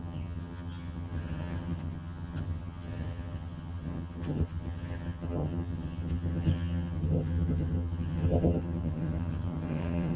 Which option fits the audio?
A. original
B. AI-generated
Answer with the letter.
B